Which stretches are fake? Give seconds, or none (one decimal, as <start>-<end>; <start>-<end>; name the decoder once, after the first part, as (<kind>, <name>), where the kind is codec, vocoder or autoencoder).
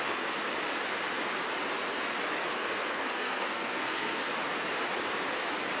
2.5-4.3 (codec, SNAC)